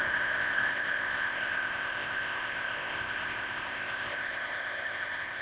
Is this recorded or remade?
remade